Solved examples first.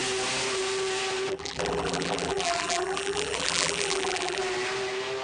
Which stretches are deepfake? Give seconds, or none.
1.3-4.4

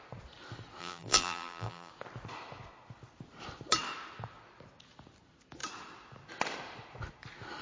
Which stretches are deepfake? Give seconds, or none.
0.8-1.9

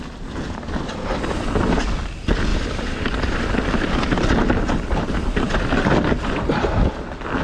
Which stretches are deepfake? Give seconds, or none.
2.5-3.9

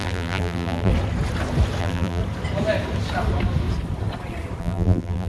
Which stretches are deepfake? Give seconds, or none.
0.0-0.9; 1.8-2.2; 4.6-5.3

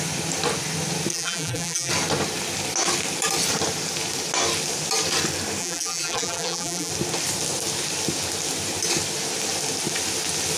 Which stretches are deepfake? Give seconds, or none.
1.1-1.9; 5.6-6.9

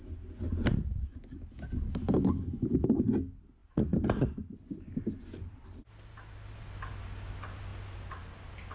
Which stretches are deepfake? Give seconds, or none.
none

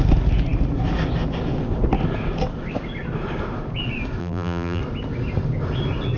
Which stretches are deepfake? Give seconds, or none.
4.2-4.8

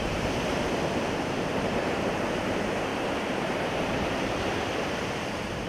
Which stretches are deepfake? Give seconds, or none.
0.0-0.5; 1.5-5.7